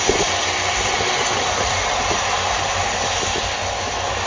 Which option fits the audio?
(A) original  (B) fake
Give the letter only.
A